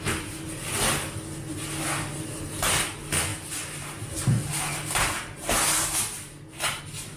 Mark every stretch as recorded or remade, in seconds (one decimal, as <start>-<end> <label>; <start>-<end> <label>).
0.0-3.3 recorded; 3.3-6.8 remade; 6.8-7.2 recorded